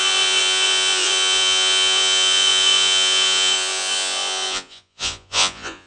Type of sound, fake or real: fake